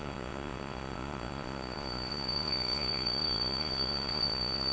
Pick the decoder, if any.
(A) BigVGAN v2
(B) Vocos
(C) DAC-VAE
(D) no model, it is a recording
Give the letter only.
B